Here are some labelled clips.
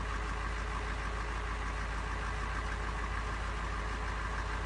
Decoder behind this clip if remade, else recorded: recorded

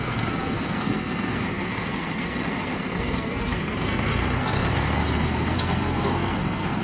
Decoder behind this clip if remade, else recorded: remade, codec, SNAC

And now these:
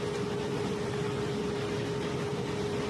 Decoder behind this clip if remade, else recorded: recorded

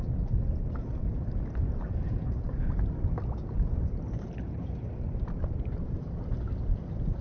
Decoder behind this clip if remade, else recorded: recorded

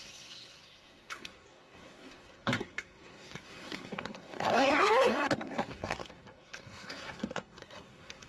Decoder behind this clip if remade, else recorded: remade, codec, SNAC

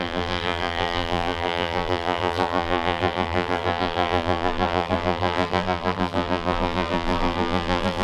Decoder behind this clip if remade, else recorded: remade, vocoder, BigVGAN v2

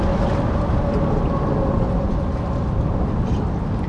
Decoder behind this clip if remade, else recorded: recorded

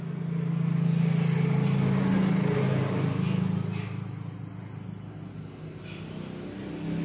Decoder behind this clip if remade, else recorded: recorded